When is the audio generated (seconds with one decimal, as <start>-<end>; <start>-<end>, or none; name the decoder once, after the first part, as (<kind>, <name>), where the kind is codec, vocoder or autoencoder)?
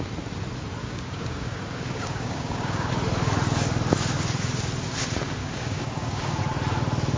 0.8-2.9 (codec, DAC); 5.4-6.4